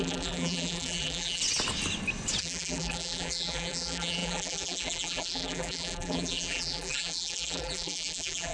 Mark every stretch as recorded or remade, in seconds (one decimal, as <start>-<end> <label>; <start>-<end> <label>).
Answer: 0.0-1.4 remade; 1.4-2.4 recorded; 2.4-8.5 remade